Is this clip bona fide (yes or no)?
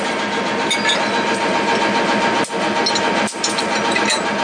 yes